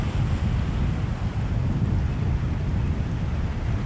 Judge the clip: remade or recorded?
recorded